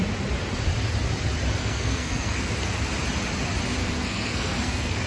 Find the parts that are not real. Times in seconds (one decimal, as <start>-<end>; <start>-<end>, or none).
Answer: 1.6-2.5; 3.8-5.1